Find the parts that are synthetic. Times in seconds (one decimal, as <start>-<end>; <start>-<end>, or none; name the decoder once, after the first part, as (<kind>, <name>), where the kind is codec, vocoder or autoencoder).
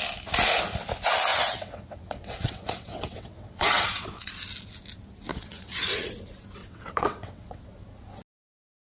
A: 1.3-4.3 (vocoder, WaveNeXt); 5.3-6.1; 6.6-7.6